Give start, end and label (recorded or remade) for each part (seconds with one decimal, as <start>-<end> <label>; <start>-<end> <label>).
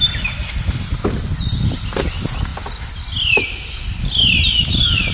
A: 0.0-5.1 recorded